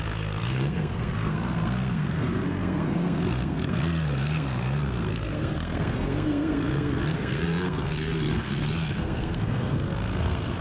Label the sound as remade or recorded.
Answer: remade